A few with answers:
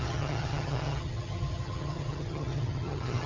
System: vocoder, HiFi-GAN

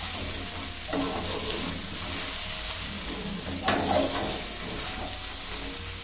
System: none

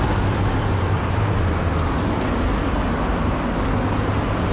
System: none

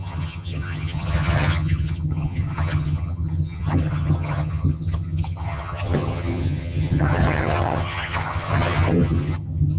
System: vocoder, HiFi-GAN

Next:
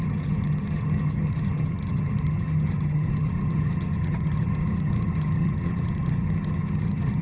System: vocoder, HiFi-GAN